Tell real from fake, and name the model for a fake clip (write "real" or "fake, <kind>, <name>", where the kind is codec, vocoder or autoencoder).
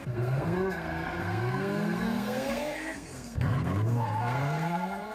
fake, codec, SNAC